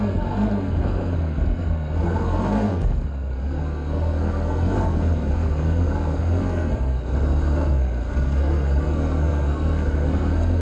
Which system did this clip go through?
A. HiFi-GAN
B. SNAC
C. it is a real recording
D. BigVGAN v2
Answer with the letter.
B